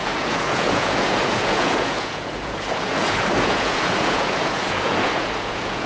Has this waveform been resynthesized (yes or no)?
yes